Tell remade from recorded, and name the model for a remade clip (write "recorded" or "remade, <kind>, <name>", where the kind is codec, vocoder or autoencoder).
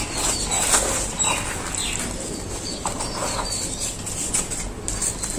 recorded